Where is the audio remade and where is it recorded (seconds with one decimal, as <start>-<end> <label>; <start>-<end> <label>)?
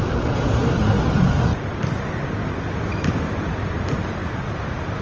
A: 0.0-5.0 remade